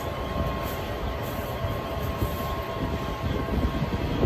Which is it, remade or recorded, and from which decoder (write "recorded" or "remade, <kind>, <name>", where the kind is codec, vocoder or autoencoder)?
recorded